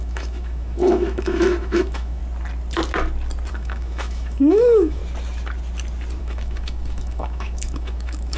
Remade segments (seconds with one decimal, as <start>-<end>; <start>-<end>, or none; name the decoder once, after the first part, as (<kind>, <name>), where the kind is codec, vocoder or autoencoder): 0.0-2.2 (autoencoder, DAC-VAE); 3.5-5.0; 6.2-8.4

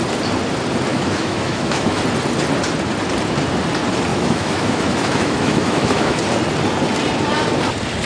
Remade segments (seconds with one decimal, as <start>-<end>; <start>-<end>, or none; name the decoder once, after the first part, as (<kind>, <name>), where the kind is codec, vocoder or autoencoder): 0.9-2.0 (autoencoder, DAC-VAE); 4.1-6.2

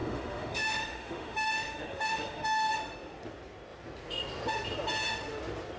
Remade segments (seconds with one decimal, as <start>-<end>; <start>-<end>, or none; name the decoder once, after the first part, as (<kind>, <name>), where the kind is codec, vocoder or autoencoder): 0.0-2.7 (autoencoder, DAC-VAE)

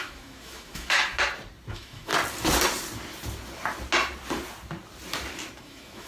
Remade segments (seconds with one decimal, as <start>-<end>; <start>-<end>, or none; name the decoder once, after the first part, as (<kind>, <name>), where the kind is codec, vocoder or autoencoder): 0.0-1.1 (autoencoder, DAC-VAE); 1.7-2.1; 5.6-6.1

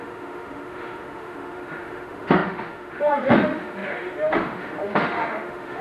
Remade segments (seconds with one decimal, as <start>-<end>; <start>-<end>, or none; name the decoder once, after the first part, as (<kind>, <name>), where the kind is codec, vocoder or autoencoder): 0.0-5.8 (autoencoder, DAC-VAE)